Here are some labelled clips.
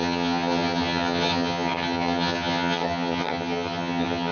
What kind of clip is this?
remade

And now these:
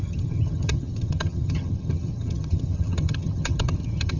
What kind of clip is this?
remade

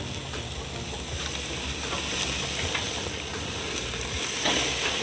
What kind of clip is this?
recorded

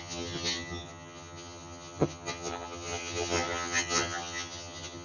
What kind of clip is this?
remade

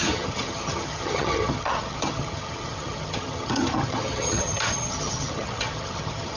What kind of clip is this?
remade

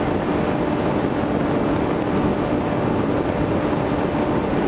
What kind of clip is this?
recorded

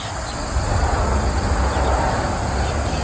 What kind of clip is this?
recorded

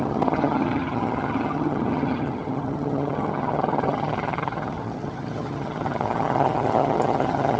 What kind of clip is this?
remade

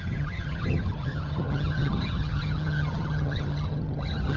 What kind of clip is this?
remade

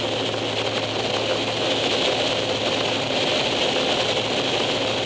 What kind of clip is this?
recorded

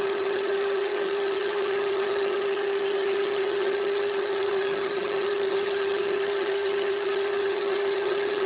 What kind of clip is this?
remade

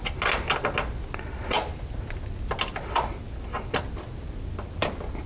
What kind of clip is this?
recorded